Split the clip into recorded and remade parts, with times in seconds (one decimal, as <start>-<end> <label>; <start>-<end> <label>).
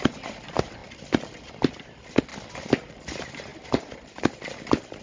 0.0-5.0 recorded